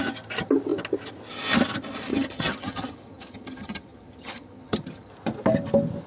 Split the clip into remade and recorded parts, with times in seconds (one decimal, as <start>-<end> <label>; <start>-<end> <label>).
0.0-2.1 recorded; 2.1-5.1 remade; 5.1-6.1 recorded